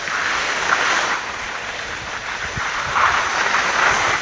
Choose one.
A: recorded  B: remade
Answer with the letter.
A